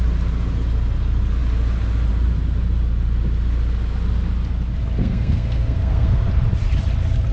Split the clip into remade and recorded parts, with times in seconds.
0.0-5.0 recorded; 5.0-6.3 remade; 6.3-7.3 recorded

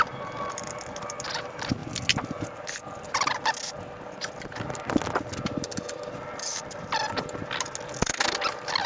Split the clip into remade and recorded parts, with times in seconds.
0.0-8.9 recorded

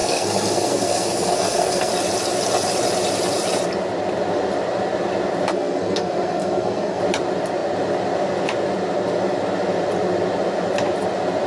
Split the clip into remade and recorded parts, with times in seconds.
0.0-1.9 remade; 1.9-5.5 recorded; 5.5-7.0 remade; 7.0-11.5 recorded

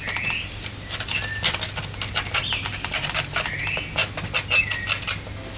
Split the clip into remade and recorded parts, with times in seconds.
0.0-4.0 remade; 4.0-5.6 recorded

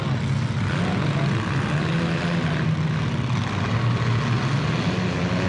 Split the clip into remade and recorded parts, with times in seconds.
0.0-5.5 recorded

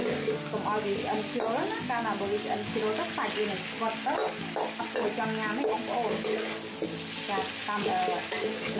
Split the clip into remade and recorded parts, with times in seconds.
0.0-8.8 recorded

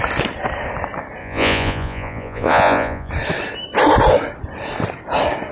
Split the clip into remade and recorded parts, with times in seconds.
0.0-1.2 recorded; 1.2-3.1 remade; 3.1-5.5 recorded